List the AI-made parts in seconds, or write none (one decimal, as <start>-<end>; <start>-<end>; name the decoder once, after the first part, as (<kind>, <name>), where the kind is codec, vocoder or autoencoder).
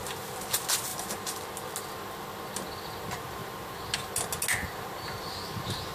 none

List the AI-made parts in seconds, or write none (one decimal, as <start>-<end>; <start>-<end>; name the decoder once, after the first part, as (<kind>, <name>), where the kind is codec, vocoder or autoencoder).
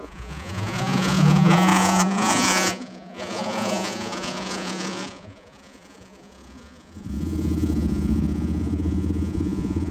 0.0-9.9 (vocoder, Vocos)